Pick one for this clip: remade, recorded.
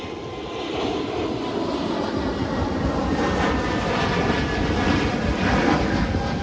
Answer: recorded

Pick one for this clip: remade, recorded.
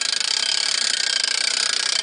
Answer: recorded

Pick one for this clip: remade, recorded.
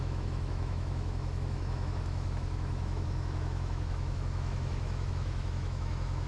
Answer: remade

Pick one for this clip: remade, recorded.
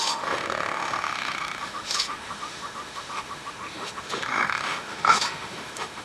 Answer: remade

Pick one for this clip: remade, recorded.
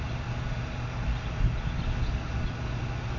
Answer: recorded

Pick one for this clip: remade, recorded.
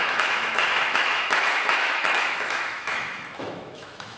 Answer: remade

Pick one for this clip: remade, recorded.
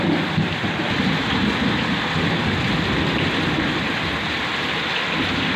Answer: recorded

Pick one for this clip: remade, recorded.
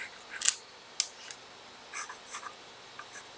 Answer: recorded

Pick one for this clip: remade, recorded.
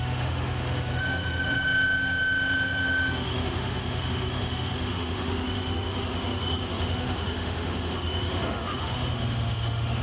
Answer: remade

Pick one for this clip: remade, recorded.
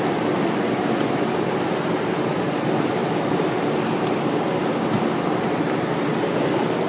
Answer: recorded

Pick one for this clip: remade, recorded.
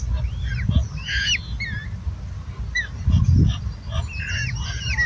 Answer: recorded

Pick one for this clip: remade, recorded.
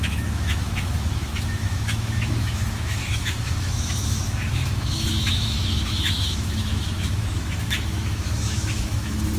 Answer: remade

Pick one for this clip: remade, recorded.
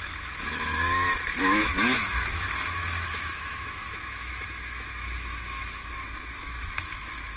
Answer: remade